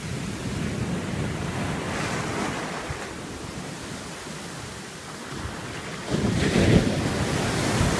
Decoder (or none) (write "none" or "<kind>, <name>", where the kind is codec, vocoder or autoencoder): none